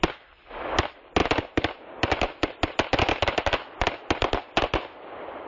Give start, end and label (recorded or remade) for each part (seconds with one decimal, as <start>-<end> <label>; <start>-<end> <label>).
0.0-5.5 recorded